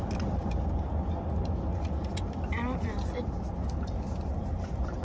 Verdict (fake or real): real